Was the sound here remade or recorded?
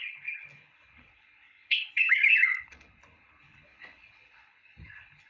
remade